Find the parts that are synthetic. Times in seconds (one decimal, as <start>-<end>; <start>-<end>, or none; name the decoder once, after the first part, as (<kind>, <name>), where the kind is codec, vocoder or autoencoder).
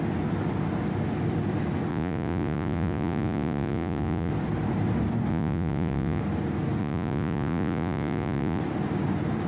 1.9-4.3 (vocoder, Vocos); 5.3-6.2; 6.8-8.6